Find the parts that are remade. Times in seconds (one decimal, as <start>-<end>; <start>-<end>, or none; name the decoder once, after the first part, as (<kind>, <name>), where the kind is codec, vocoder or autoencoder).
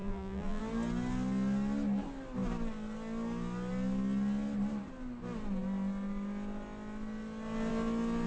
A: 0.0-0.6 (vocoder, BigVGAN v2)